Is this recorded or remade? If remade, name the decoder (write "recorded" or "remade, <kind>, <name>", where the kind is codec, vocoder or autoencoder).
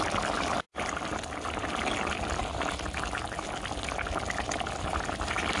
recorded